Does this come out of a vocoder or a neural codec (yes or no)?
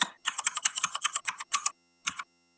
yes